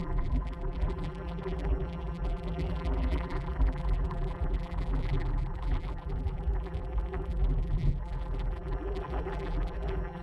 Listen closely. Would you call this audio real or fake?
fake